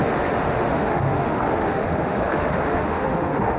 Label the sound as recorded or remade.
remade